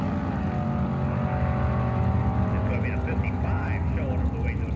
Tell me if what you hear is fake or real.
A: real